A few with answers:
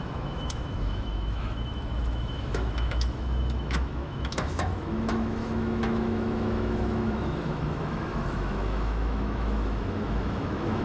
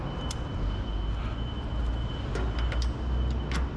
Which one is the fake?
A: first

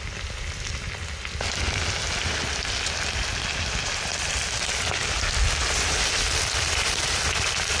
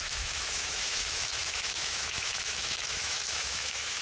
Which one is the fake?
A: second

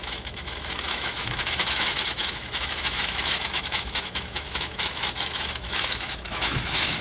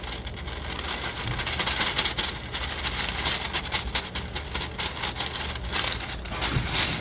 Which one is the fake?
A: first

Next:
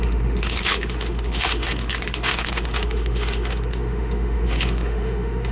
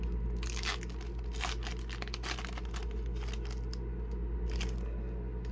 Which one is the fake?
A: first